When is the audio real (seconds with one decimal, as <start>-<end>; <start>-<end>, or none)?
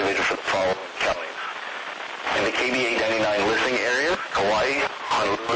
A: 0.0-5.6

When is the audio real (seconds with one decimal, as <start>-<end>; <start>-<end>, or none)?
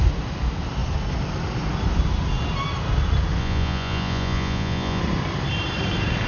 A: 0.0-3.4; 5.0-6.3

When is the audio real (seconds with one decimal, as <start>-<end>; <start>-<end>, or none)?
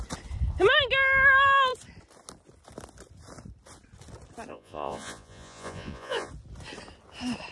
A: 0.0-4.5; 6.3-7.5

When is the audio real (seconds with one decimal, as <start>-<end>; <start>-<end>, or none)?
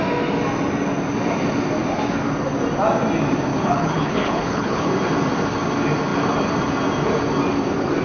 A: 0.0-3.5; 4.9-8.0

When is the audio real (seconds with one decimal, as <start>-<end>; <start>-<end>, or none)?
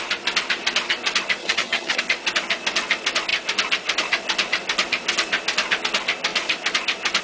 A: 0.0-1.4; 2.0-7.2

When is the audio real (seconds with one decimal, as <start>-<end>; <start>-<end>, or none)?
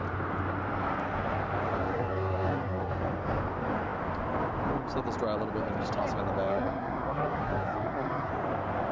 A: 0.0-1.8; 2.9-6.5; 8.3-8.9